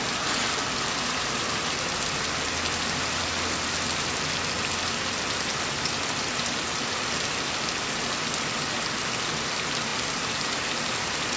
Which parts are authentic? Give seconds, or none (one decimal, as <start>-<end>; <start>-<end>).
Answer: 0.0-11.4